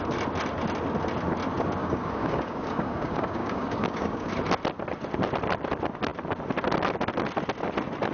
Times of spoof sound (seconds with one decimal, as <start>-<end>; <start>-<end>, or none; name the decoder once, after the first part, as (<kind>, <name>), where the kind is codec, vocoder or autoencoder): 1.8-4.3 (codec, DAC)